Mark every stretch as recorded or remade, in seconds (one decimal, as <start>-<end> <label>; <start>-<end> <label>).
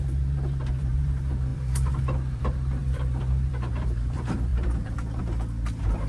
0.0-6.1 remade